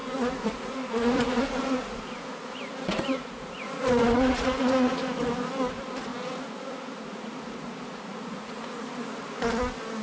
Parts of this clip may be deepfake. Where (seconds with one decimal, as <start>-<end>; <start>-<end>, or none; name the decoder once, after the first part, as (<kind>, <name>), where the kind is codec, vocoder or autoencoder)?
0.0-5.2 (vocoder, Vocos); 6.1-8.9